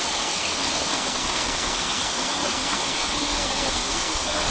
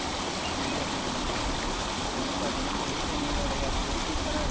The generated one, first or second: first